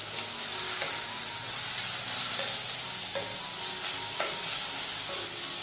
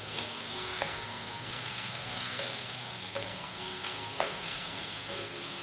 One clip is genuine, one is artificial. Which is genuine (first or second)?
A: first